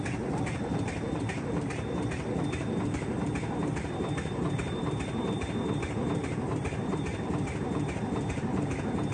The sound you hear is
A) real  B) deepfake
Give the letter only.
B